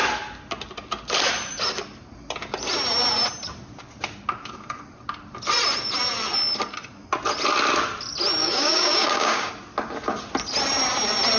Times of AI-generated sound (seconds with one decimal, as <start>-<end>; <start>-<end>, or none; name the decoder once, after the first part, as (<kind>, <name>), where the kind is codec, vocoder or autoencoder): 8.4-9.5 (codec, DAC)